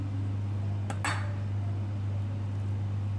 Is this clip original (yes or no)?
yes